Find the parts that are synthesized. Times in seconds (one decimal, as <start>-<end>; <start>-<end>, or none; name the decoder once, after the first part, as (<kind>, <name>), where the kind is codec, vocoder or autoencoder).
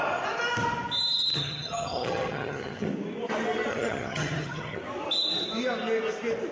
1.3-2.9 (vocoder, HiFi-GAN); 3.7-4.8